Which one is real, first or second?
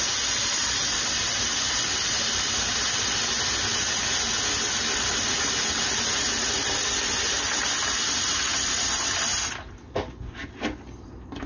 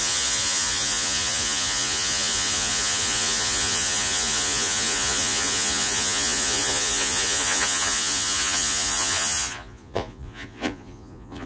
first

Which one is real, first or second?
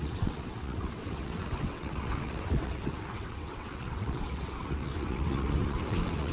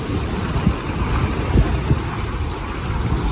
second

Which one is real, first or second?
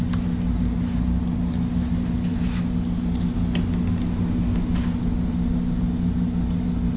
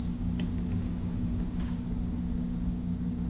first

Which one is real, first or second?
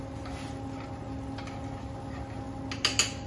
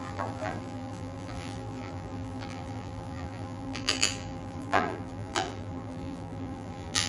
first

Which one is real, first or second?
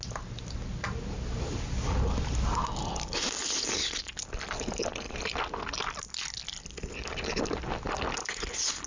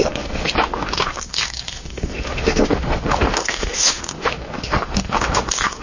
first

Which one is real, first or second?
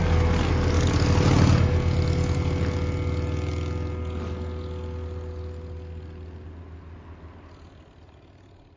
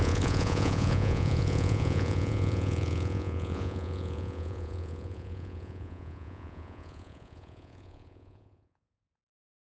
first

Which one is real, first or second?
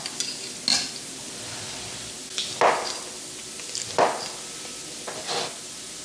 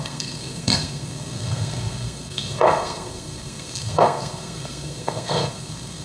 first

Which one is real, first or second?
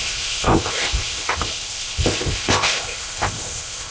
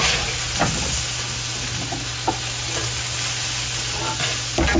second